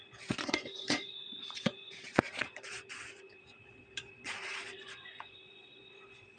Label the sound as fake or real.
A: fake